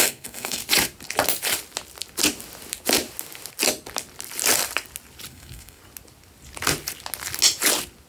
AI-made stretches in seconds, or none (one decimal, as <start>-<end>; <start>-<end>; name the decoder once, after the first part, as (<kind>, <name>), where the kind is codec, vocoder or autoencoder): 0.0-0.6 (codec, SNAC); 5.3-5.8